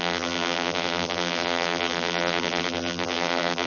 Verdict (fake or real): fake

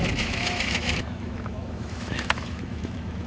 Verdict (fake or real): fake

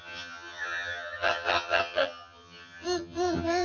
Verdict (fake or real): fake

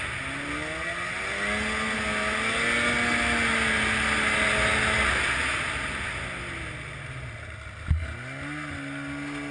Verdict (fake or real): real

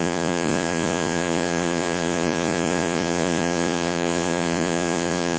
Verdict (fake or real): fake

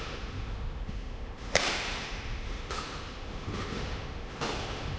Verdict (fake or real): fake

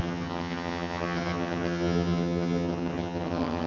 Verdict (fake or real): fake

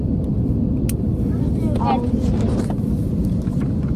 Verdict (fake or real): real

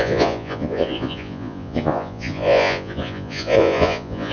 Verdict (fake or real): fake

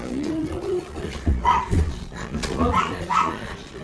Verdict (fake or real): fake